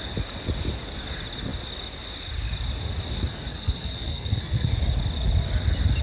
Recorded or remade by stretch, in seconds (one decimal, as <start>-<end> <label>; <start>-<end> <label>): 0.0-3.5 recorded; 3.5-4.8 remade; 4.8-6.0 recorded